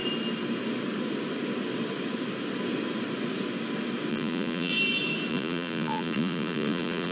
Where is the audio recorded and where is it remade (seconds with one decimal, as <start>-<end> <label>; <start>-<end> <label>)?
0.0-4.1 recorded; 4.1-4.7 remade; 4.7-5.3 recorded; 5.3-7.1 remade